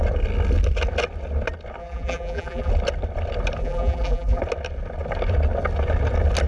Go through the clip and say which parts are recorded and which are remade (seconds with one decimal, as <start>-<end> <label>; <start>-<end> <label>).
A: 0.0-1.8 recorded; 1.8-2.7 remade; 2.7-3.6 recorded; 3.6-4.4 remade; 4.4-6.5 recorded